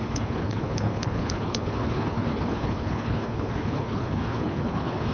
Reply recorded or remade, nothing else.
remade